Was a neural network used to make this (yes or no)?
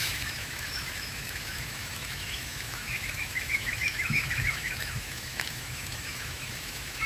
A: yes